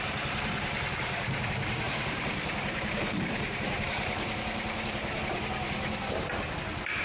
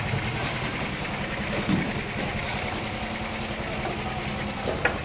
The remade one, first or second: first